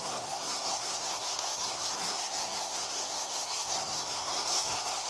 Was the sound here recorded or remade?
remade